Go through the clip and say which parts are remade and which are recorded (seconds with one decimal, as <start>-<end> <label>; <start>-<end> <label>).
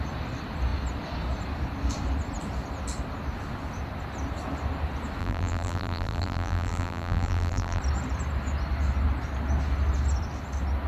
0.0-5.2 recorded; 5.2-7.8 remade; 7.8-10.9 recorded